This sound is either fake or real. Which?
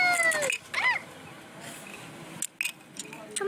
real